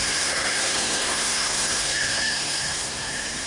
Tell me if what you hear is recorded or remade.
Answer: remade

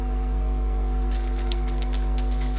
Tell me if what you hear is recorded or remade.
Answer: remade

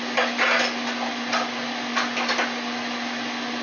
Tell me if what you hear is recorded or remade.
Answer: recorded